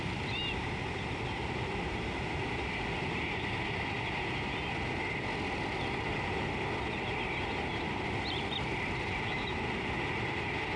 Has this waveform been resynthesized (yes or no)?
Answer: no